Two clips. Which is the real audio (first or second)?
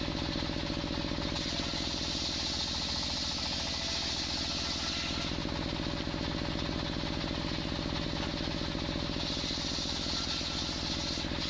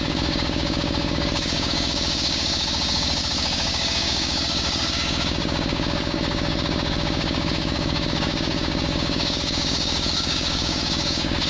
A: first